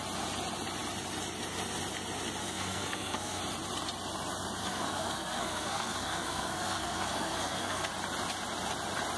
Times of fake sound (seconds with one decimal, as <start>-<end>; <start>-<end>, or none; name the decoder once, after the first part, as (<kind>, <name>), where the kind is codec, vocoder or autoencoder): 2.4-3.4 (codec, SNAC); 4.6-7.9